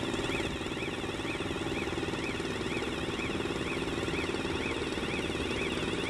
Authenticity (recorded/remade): recorded